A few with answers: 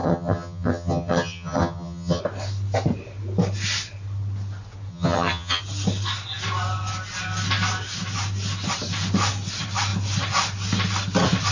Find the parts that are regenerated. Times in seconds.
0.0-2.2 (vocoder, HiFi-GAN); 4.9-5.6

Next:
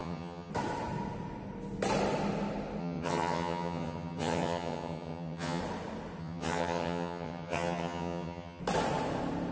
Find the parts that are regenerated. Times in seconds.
0.0-0.5 (vocoder, HiFi-GAN); 2.8-5.6; 6.2-8.6

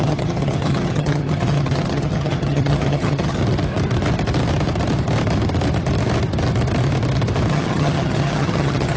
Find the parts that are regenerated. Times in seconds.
0.0-3.4 (vocoder, HiFi-GAN); 7.5-9.0

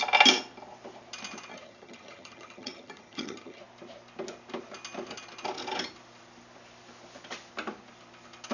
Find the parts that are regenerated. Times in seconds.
1.5-3.6 (vocoder, HiFi-GAN)

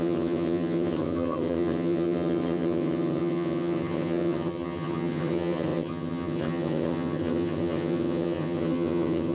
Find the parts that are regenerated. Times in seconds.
0.0-9.3 (vocoder, HiFi-GAN)